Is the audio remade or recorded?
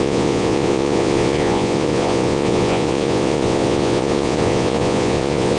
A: remade